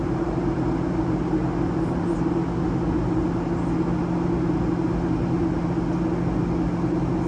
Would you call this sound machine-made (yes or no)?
no